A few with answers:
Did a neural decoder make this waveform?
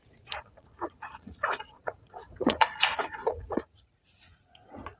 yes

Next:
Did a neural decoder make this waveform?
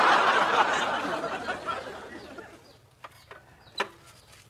no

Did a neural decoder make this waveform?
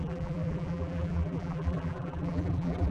yes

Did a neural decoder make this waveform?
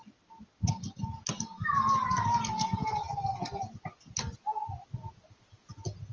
no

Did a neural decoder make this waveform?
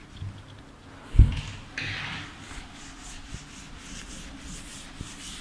no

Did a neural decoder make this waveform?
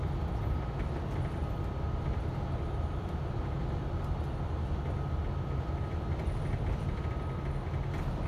no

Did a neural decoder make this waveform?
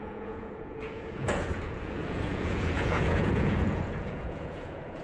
yes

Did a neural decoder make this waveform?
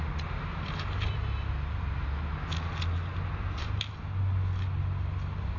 no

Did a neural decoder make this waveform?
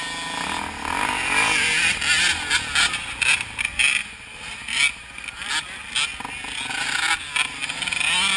no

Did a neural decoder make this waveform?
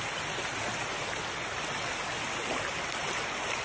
no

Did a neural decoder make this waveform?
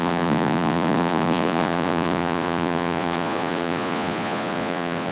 yes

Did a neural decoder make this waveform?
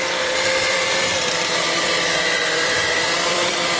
yes